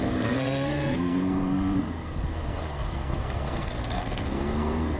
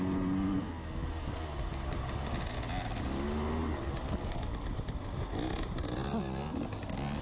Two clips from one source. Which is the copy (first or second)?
first